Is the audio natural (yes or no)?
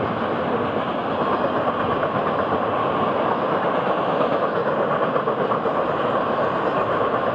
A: yes